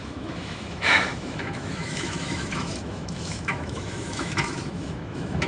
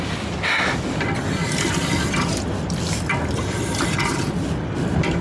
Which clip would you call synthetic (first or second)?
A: first